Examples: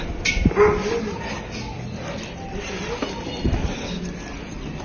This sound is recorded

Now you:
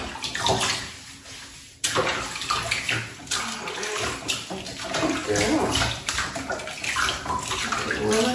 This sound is recorded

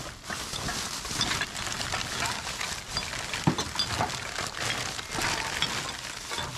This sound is recorded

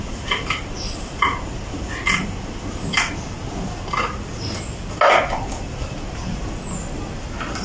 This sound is recorded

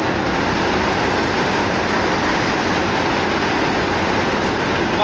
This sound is recorded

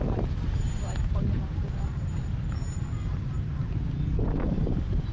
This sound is recorded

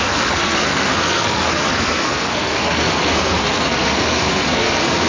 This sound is remade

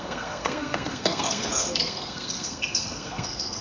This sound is remade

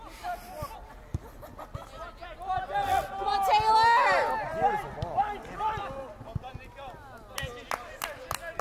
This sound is recorded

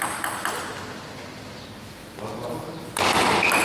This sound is recorded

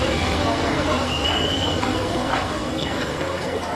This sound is remade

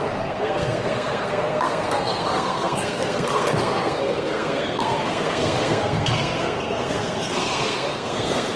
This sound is remade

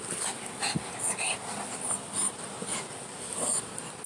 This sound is recorded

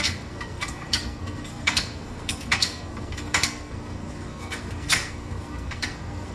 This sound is remade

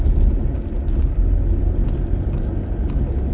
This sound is recorded